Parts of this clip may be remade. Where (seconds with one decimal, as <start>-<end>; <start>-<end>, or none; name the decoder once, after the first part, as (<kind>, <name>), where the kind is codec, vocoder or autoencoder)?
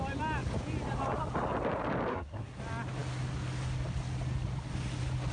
2.1-2.6 (codec, SNAC)